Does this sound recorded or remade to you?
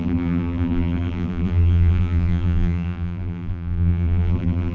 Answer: remade